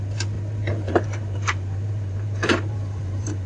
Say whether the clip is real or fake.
fake